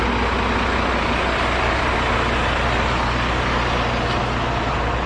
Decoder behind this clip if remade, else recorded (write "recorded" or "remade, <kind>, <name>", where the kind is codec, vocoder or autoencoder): recorded